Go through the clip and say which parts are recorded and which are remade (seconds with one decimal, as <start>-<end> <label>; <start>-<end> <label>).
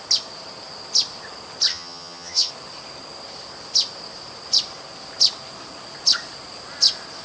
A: 0.0-1.7 recorded; 1.7-2.5 remade; 2.5-7.2 recorded